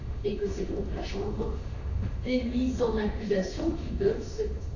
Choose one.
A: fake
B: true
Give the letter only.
A